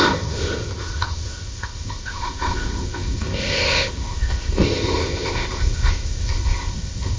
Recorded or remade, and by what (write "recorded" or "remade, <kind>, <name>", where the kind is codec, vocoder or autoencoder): remade, codec, ZipCodec